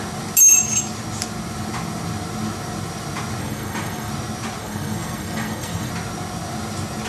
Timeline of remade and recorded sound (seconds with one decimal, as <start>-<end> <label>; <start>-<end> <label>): 0.0-3.4 recorded; 3.4-4.1 remade; 4.1-4.6 recorded; 4.6-5.9 remade; 5.9-7.1 recorded